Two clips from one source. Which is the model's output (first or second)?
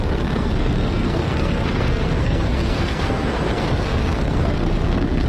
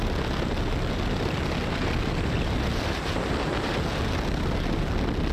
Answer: first